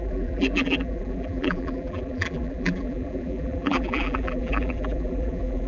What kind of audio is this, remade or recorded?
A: remade